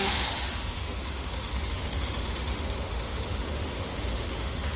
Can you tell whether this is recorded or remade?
remade